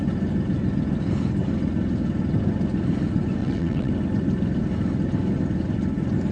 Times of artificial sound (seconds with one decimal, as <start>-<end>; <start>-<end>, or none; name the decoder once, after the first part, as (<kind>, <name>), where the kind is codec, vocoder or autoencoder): 3.4-3.9 (vocoder, WaveNeXt)